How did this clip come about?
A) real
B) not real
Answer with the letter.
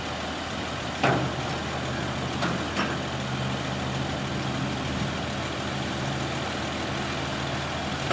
A